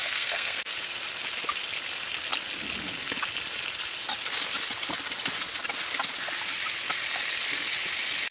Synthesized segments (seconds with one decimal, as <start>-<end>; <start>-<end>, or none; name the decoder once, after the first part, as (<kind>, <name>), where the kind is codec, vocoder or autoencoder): 0.0-0.7 (codec, SNAC)